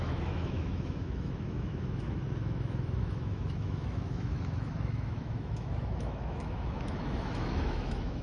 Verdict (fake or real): fake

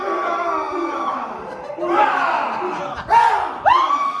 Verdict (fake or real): real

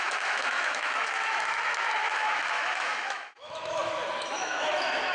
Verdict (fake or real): fake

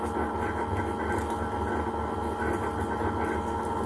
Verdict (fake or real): real